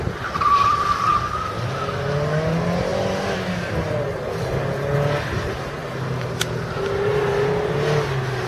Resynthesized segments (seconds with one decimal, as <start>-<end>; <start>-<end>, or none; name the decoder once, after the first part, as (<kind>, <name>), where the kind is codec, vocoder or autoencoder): none